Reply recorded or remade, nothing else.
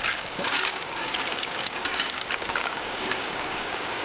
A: remade